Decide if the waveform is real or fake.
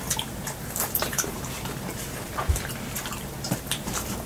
fake